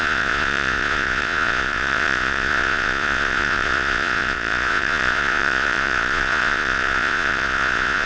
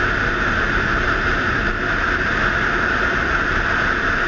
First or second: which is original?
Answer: second